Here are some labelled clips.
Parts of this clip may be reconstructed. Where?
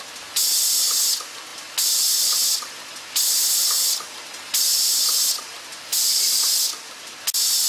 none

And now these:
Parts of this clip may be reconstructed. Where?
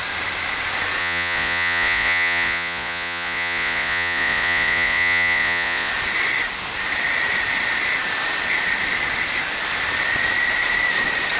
1.0-5.9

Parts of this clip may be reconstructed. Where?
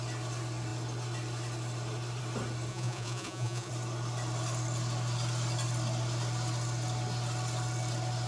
2.7-3.7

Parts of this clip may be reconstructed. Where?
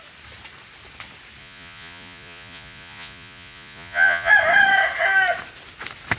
1.4-4.3